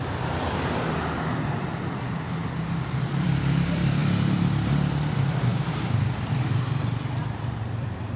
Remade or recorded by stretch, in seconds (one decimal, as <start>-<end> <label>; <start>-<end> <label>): 0.0-8.2 remade